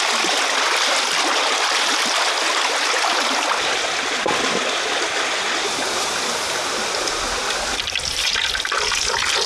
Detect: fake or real real